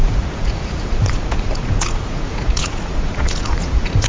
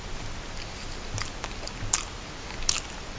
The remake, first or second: first